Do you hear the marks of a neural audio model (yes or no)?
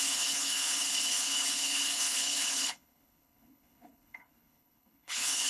yes